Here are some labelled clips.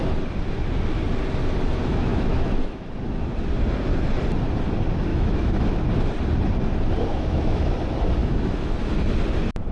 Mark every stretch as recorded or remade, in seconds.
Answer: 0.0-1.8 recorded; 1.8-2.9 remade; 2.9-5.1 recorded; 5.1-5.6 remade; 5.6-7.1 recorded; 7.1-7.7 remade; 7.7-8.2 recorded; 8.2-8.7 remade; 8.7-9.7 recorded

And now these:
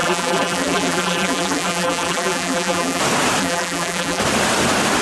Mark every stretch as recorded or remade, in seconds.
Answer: 0.0-3.0 remade; 3.0-3.4 recorded; 3.4-4.2 remade; 4.2-5.0 recorded

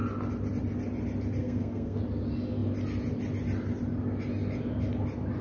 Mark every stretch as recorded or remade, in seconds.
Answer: 0.0-1.4 recorded; 1.4-2.0 remade; 2.0-5.4 recorded

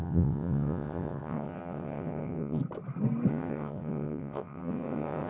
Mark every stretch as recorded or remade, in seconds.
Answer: 0.0-2.6 remade; 2.6-3.3 recorded; 3.3-5.3 remade

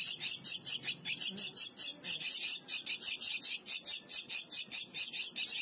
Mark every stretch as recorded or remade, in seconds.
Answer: 0.0-5.6 recorded

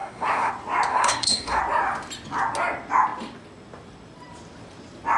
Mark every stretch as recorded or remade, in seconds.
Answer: 0.0-0.5 remade; 0.5-0.9 recorded; 0.9-1.6 remade; 1.6-5.2 recorded